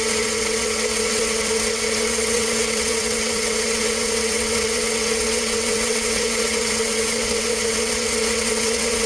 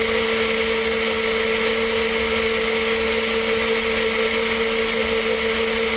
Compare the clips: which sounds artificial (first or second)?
first